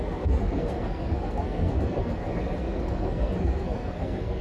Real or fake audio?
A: fake